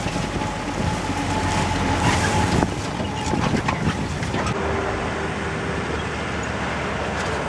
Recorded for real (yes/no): yes